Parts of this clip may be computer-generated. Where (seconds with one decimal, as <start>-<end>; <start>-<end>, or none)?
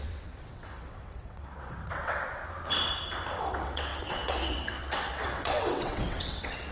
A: 0.0-2.4; 3.4-6.7